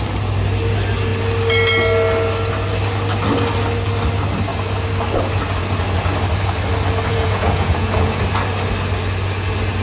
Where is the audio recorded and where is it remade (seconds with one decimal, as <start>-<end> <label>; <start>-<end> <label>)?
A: 0.0-7.1 recorded; 7.1-8.2 remade; 8.2-9.8 recorded